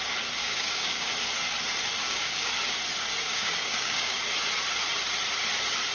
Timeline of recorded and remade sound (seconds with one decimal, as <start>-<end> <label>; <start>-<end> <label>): 0.0-0.4 recorded; 0.4-1.1 remade; 1.1-2.0 recorded; 2.0-2.5 remade; 2.5-3.3 recorded; 3.3-4.2 remade; 4.2-5.9 recorded